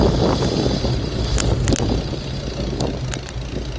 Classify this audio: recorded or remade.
recorded